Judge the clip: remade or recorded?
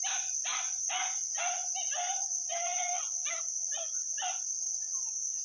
remade